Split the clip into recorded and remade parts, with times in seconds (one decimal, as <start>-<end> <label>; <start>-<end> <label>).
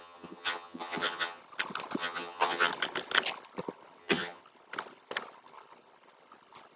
0.0-1.4 remade; 1.4-2.0 recorded; 2.0-2.7 remade; 2.7-4.0 recorded; 4.0-4.4 remade; 4.4-6.8 recorded